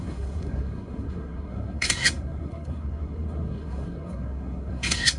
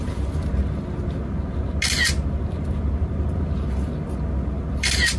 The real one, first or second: second